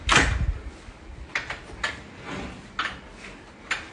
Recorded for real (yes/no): yes